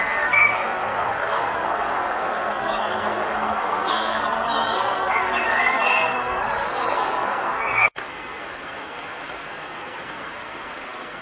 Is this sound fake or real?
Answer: fake